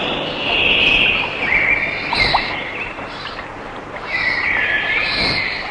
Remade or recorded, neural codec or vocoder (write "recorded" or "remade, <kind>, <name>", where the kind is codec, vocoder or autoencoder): recorded